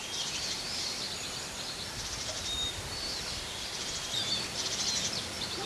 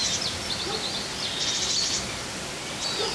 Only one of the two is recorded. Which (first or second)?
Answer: second